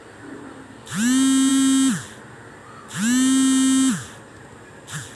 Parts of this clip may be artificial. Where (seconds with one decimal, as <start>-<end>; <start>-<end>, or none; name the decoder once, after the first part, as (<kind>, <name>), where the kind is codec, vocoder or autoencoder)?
none